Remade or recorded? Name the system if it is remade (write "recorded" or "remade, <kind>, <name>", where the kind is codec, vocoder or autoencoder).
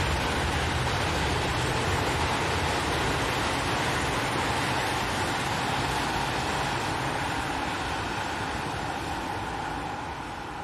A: remade, vocoder, BigVGAN v2